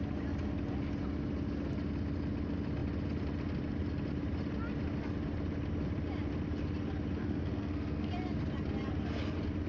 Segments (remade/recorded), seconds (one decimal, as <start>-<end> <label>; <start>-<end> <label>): 0.0-7.2 recorded; 7.2-8.1 remade; 8.1-9.7 recorded

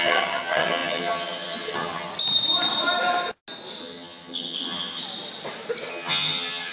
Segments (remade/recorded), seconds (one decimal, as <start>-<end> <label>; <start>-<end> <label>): 0.0-2.1 remade; 2.1-3.8 recorded; 3.8-5.0 remade; 5.0-5.9 recorded; 5.9-6.7 remade

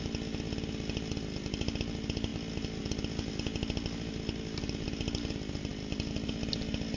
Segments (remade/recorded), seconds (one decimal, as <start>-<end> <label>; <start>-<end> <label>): 0.0-7.0 recorded

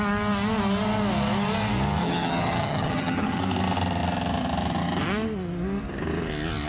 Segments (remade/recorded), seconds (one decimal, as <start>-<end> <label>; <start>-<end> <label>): 0.0-2.0 recorded; 2.0-3.4 remade; 3.4-6.7 recorded

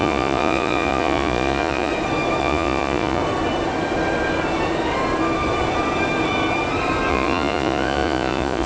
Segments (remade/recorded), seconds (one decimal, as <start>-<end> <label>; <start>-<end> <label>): 0.0-1.9 remade; 1.9-2.4 recorded; 2.4-3.2 remade; 3.2-7.1 recorded; 7.1-8.7 remade

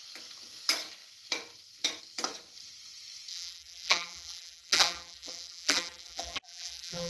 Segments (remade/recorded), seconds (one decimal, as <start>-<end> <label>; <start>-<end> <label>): 0.0-3.3 recorded; 3.3-7.1 remade